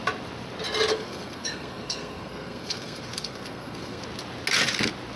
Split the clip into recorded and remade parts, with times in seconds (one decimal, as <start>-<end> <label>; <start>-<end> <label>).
0.0-0.9 recorded; 0.9-4.0 remade; 4.0-5.2 recorded